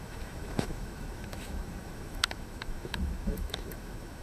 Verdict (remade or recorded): remade